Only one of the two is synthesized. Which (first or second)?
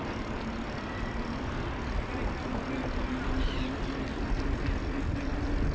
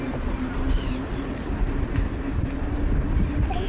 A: second